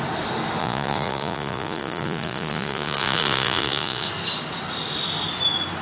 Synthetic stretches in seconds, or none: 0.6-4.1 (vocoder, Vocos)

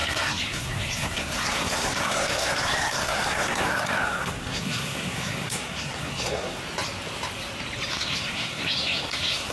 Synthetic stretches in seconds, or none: 0.0-6.6 (codec, SNAC); 7.9-9.5